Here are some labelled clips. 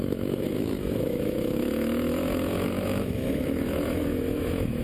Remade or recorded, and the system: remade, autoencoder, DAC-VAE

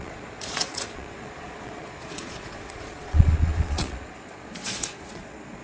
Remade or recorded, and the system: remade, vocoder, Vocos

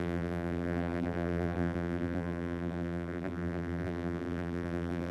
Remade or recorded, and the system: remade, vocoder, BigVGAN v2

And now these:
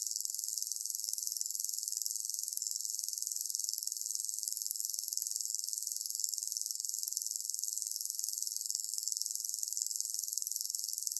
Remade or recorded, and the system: remade, codec, SNAC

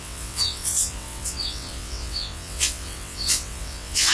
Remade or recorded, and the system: remade, vocoder, WaveNeXt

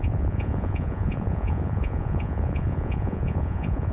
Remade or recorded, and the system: remade, vocoder, Vocos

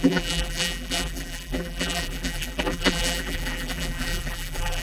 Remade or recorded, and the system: remade, vocoder, BigVGAN v2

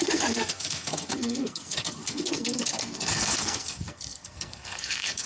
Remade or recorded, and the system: remade, codec, SNAC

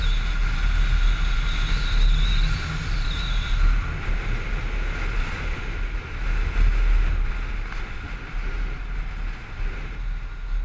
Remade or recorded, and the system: recorded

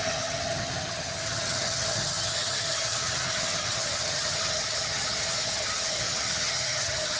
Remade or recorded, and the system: remade, vocoder, HiFi-GAN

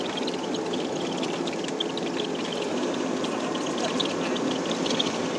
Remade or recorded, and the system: recorded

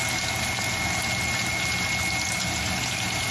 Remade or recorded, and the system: recorded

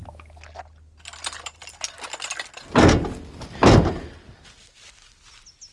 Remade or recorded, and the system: recorded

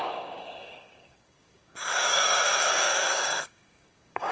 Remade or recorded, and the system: remade, codec, DAC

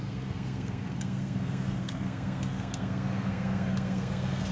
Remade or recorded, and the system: remade, codec, SNAC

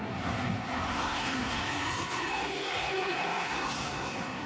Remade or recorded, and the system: remade, codec, SNAC